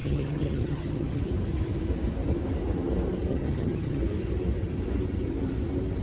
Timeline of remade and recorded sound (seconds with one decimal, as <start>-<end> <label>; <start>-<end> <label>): 0.0-1.2 remade; 1.2-3.3 recorded; 3.3-4.0 remade; 4.0-6.0 recorded